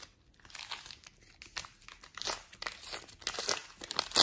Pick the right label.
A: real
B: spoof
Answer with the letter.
A